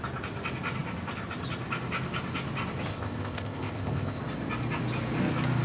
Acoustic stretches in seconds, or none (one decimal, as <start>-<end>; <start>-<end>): 0.0-2.9; 4.2-5.6